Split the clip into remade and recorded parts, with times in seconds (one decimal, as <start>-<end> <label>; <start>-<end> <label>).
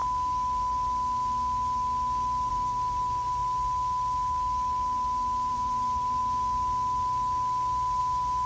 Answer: 0.0-2.5 recorded; 2.5-3.4 remade; 3.4-5.5 recorded; 5.5-6.2 remade; 6.2-8.0 recorded; 8.0-8.5 remade